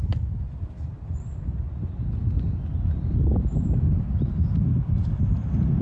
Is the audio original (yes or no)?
yes